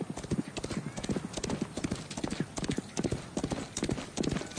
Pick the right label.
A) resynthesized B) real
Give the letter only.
B